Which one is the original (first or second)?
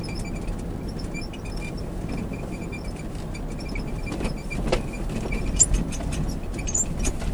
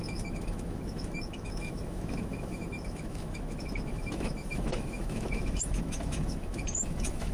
first